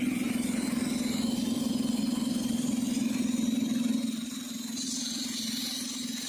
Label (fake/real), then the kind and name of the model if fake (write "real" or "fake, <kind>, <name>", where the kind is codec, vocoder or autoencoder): real